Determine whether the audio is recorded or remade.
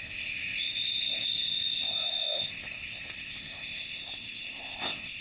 remade